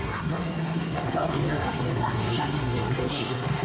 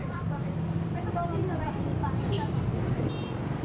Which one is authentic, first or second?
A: second